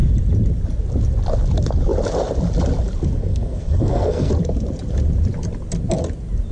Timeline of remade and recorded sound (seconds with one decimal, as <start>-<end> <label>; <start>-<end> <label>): 0.0-3.2 recorded; 3.2-4.3 remade; 4.3-6.5 recorded